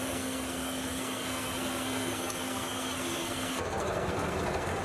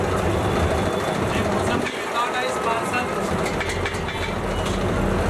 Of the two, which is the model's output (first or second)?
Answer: first